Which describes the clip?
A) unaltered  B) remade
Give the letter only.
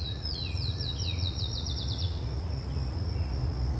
B